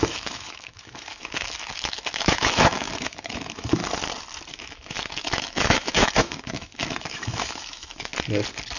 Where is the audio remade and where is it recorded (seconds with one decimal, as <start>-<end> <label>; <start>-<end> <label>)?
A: 0.0-3.8 remade; 3.8-4.5 recorded; 4.5-8.1 remade; 8.1-8.8 recorded